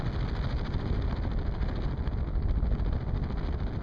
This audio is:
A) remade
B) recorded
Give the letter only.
B